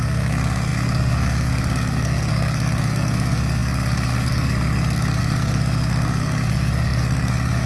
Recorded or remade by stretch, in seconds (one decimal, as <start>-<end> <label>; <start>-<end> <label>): 0.0-7.7 remade